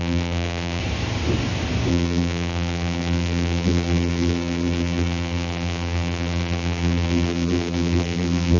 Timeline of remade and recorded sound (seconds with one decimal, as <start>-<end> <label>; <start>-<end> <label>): 0.0-0.8 remade; 0.8-1.9 recorded; 1.9-8.6 remade